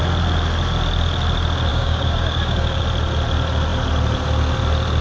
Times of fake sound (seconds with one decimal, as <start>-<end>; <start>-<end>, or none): 1.7-2.8